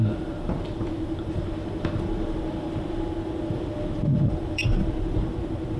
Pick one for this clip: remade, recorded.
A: remade